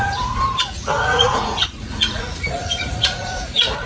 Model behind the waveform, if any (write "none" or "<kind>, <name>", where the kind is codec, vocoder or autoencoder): vocoder, Vocos